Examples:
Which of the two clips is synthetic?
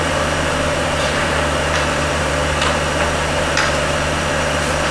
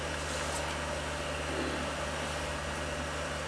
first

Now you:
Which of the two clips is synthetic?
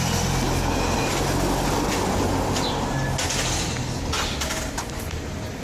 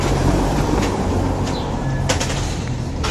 second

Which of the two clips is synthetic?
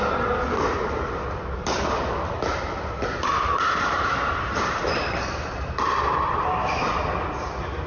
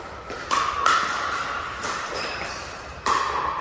second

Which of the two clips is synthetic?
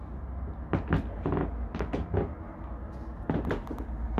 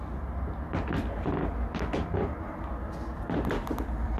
second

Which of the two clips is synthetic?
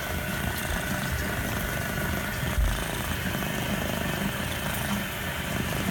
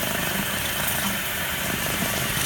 second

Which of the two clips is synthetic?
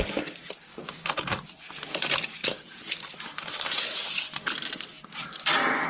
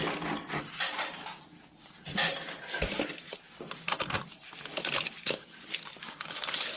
second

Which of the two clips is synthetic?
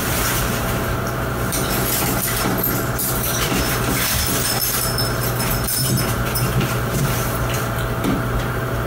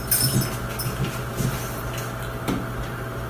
first